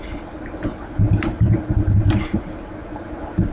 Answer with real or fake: real